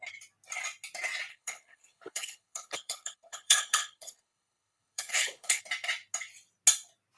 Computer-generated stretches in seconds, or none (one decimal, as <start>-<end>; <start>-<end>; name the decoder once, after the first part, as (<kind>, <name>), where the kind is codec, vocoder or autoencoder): 1.3-5.6 (codec, HILCodec)